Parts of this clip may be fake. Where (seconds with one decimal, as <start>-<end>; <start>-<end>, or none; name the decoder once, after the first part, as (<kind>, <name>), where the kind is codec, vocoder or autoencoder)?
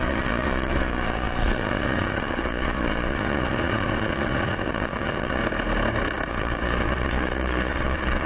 0.0-5.4 (vocoder, Vocos); 6.3-8.3